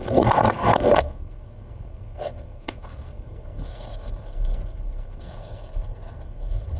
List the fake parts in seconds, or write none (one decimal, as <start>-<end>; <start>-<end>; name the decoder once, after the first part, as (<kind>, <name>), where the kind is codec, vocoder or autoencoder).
0.0-6.8 (codec, SNAC)